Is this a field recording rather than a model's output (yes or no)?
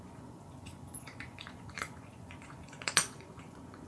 no